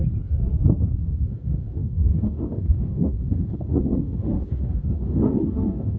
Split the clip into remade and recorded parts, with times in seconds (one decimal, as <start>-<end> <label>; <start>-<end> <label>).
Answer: 0.0-1.0 recorded; 1.0-6.0 remade